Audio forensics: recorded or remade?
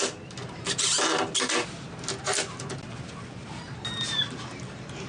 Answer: recorded